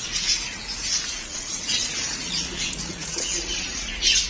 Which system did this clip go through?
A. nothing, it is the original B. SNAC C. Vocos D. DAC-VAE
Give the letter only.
C